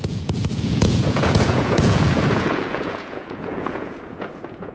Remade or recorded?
remade